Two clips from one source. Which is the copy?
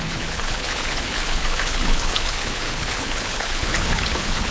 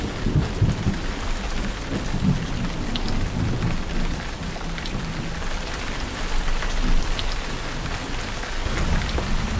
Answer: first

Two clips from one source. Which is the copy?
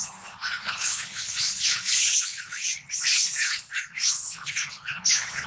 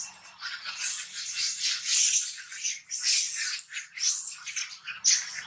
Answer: first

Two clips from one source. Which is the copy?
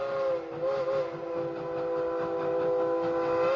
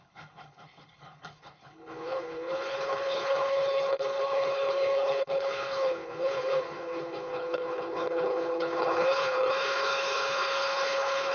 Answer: second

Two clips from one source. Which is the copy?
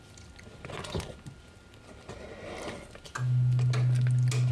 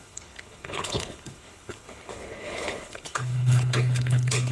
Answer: second